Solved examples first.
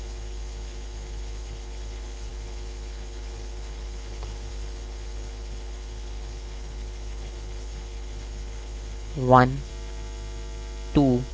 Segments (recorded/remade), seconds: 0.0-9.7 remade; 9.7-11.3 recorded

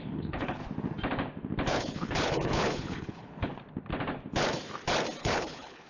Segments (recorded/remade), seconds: 0.0-0.6 remade; 0.6-1.7 recorded; 1.7-3.5 remade; 3.5-5.2 recorded; 5.2-5.9 remade

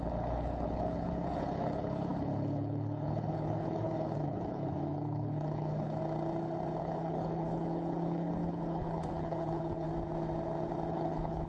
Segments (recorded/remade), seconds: 0.0-6.0 remade; 6.0-6.8 recorded; 6.8-9.9 remade; 9.9-10.9 recorded; 10.9-11.5 remade

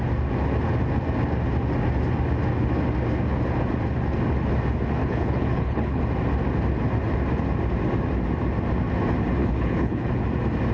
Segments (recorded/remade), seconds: 0.0-5.0 recorded; 5.0-6.0 remade; 6.0-9.4 recorded; 9.4-10.1 remade; 10.1-10.7 recorded

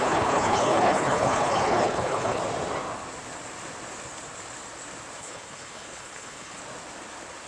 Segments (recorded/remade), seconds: 0.0-2.4 remade; 2.4-5.2 recorded; 5.2-6.6 remade; 6.6-7.5 recorded

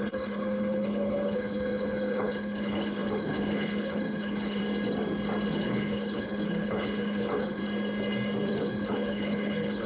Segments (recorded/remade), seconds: 0.0-4.6 remade; 4.6-5.5 recorded; 5.5-7.6 remade; 7.6-8.5 recorded; 8.5-9.9 remade

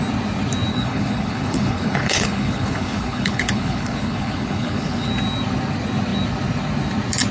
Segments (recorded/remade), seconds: 0.0-0.7 recorded; 0.7-5.1 remade; 5.1-7.3 recorded